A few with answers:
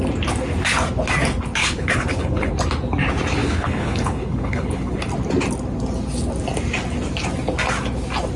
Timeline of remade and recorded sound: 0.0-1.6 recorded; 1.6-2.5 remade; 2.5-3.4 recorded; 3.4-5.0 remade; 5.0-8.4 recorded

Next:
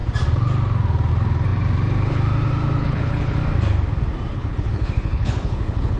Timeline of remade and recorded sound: 0.0-2.8 recorded; 2.8-3.4 remade; 3.4-4.3 recorded; 4.3-6.0 remade

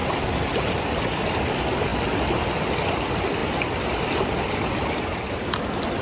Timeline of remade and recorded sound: 0.0-6.0 recorded

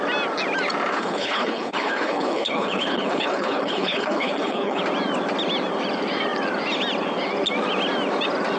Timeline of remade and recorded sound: 0.0-0.9 recorded; 0.9-4.8 remade; 4.8-8.6 recorded

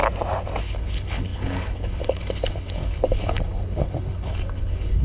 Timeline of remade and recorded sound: 0.0-0.6 recorded; 0.6-5.0 remade

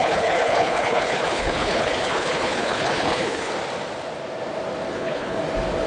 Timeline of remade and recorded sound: 0.0-3.5 remade; 3.5-4.9 recorded; 4.9-5.4 remade; 5.4-5.9 recorded

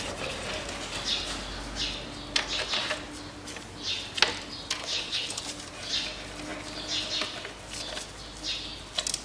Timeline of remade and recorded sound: 0.0-4.8 recorded; 4.8-5.4 remade; 5.4-9.2 recorded

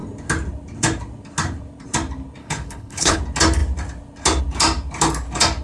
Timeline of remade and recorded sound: 0.0-2.4 recorded; 2.4-3.2 remade; 3.2-5.6 recorded